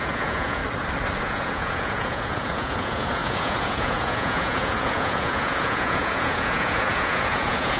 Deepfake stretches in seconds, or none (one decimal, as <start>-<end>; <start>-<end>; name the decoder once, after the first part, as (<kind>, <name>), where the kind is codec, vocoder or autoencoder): 0.0-0.6 (vocoder, Vocos); 1.2-7.8